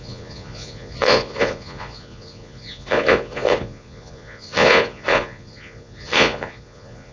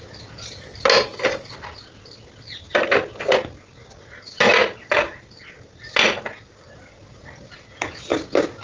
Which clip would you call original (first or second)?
second